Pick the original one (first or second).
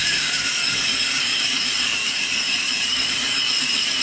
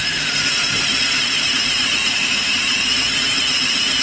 second